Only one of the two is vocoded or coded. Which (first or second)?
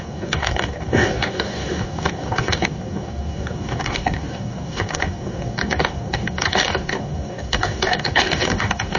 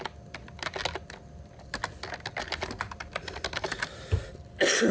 first